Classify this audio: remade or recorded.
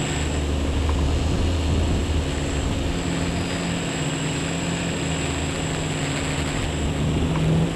recorded